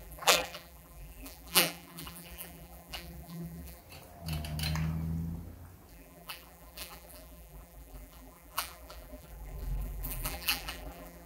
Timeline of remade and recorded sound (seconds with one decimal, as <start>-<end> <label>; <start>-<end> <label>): 0.0-3.8 remade; 3.8-5.9 recorded; 5.9-11.3 remade